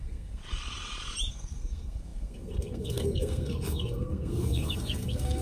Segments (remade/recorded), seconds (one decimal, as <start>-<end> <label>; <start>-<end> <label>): 0.0-0.4 remade; 0.4-1.3 recorded; 1.3-5.4 remade

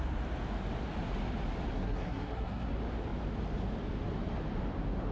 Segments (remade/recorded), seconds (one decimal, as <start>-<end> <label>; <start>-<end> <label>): 0.0-1.7 recorded; 1.7-2.7 remade; 2.7-5.1 recorded

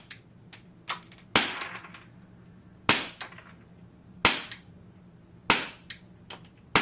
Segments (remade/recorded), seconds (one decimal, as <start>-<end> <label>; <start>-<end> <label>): 0.0-6.8 recorded

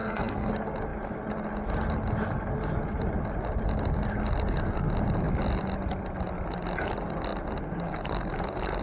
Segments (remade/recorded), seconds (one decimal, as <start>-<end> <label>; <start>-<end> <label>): 0.0-0.5 remade; 0.5-8.8 recorded

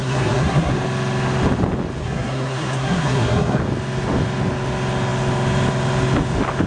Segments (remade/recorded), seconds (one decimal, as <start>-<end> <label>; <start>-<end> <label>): 0.0-0.7 remade; 0.7-2.0 recorded; 2.0-3.6 remade; 3.6-6.7 recorded